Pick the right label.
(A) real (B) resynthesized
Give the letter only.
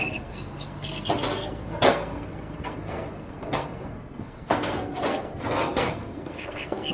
B